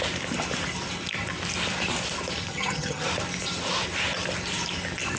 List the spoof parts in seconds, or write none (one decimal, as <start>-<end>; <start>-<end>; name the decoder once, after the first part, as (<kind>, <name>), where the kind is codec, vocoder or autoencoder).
2.5-3.1 (vocoder, HiFi-GAN)